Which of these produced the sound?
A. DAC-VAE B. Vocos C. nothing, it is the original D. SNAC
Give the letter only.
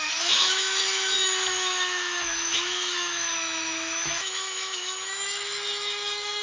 A